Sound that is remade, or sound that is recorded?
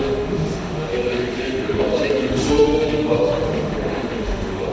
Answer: remade